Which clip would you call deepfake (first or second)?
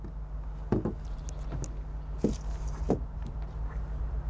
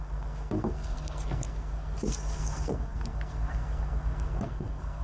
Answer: second